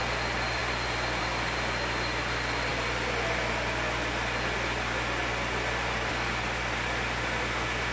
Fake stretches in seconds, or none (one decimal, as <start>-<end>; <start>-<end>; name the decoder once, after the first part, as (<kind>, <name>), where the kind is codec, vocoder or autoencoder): none